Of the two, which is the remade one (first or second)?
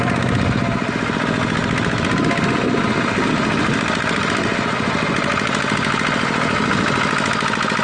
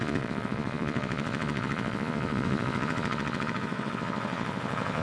second